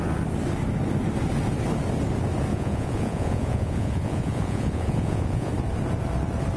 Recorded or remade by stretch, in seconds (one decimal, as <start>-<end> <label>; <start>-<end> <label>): 0.0-2.5 recorded; 2.5-5.5 remade; 5.5-6.6 recorded